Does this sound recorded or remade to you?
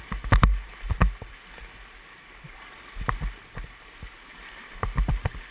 recorded